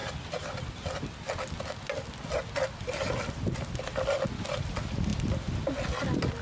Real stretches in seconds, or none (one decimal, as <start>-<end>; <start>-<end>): 0.0-5.1; 5.7-6.4